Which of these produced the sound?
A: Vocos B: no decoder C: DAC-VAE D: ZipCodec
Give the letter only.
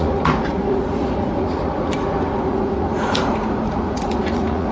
A